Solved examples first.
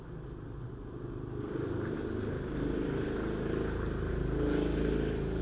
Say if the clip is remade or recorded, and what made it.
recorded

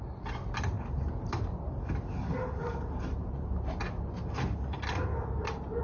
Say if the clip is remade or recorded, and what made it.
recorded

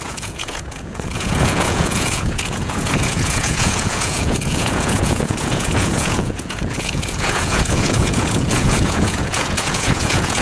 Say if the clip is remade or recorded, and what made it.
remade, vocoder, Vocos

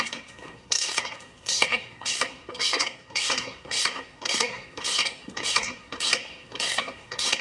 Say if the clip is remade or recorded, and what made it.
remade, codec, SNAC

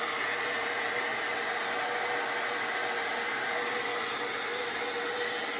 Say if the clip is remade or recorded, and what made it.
recorded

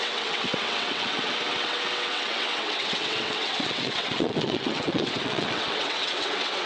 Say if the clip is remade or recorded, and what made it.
remade, vocoder, WaveNeXt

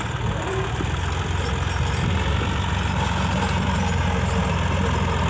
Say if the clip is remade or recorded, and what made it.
recorded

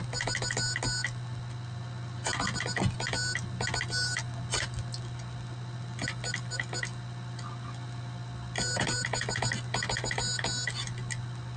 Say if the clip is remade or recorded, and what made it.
recorded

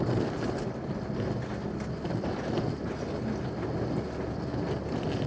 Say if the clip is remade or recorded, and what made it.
recorded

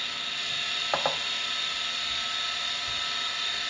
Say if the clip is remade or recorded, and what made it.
recorded